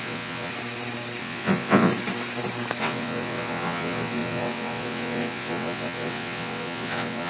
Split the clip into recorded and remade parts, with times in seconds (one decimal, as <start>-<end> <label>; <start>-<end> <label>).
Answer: 0.0-0.5 remade; 0.5-1.2 recorded; 1.2-1.9 remade; 1.9-2.8 recorded; 2.8-7.3 remade